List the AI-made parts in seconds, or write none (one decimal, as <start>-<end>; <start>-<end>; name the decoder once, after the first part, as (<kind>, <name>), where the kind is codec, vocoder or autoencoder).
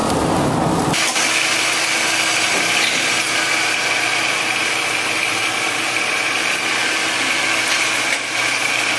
none